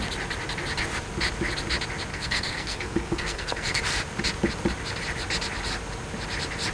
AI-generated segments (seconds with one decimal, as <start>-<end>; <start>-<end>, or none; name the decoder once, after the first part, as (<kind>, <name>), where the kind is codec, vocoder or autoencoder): 2.1-3.8 (codec, SNAC)

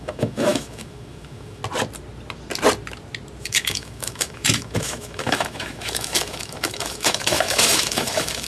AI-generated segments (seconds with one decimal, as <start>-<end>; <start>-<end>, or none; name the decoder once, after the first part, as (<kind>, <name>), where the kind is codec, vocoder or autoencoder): 0.0-1.6 (autoencoder, DAC-VAE); 3.4-8.5

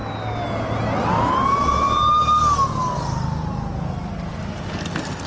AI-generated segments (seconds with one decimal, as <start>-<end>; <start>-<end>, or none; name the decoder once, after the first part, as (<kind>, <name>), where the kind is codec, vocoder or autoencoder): none

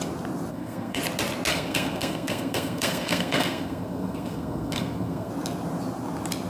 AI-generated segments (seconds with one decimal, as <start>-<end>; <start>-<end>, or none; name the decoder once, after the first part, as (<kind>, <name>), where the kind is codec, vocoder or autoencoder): 0.5-1.0 (codec, SNAC); 1.5-5.3

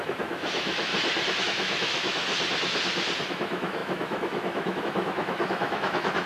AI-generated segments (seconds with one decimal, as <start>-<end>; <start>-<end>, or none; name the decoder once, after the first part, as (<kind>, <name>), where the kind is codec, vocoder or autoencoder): 0.0-0.9 (autoencoder, DAC-VAE); 1.4-2.2; 3.3-6.3

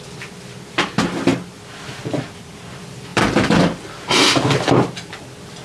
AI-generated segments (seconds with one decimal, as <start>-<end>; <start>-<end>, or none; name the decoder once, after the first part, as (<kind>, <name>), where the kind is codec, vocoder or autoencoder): 3.1-4.0 (vocoder, BigVGAN v2)

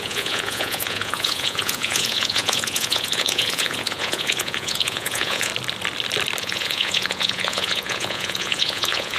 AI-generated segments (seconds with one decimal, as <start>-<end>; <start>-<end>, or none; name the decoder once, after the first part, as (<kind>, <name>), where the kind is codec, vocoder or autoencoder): 0.0-5.5 (vocoder, Vocos); 6.4-9.2

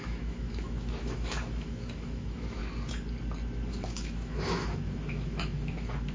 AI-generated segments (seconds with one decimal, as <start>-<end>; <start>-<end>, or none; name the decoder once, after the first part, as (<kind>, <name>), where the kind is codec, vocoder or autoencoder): 0.0-2.6 (autoencoder, DAC-VAE); 3.7-6.1